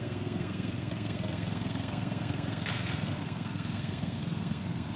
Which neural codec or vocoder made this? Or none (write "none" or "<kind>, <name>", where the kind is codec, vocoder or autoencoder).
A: codec, SNAC